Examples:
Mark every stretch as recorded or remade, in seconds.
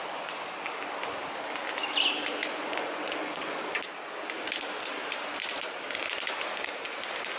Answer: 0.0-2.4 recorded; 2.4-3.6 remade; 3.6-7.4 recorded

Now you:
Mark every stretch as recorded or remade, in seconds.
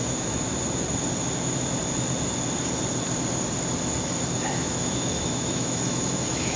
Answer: 0.0-0.5 remade; 0.5-4.5 recorded; 4.5-6.6 remade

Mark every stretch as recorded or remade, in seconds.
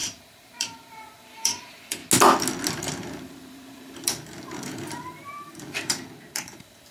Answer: 0.0-2.0 remade; 2.0-2.7 recorded; 2.7-6.9 remade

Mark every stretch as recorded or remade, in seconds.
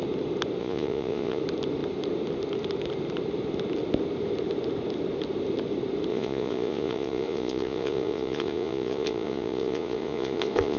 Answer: 0.0-0.6 recorded; 0.6-1.4 remade; 1.4-6.1 recorded; 6.1-10.8 remade